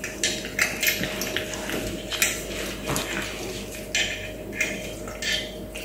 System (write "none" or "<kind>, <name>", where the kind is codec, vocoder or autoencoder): none